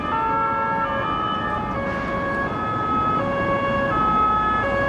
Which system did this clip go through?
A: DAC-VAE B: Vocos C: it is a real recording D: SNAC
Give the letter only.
C